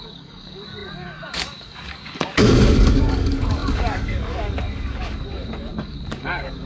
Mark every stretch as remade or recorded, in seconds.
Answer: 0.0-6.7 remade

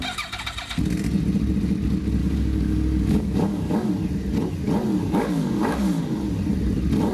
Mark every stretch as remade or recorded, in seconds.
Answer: 0.0-2.2 recorded; 2.2-3.9 remade; 3.9-5.0 recorded; 5.0-6.0 remade; 6.0-7.1 recorded

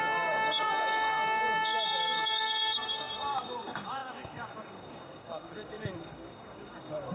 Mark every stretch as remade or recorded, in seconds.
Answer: 0.0-7.1 remade

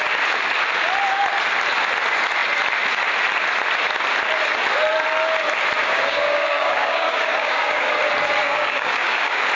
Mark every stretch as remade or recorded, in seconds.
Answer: 0.0-5.8 recorded; 5.8-7.9 remade; 7.9-8.4 recorded; 8.4-9.5 remade

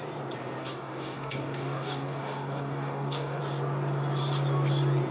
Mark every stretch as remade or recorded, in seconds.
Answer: 0.0-0.6 recorded; 0.6-3.4 remade; 3.4-5.1 recorded

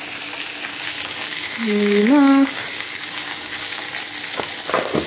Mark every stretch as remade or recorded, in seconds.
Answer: 0.0-0.7 recorded; 0.7-3.8 remade; 3.8-5.1 recorded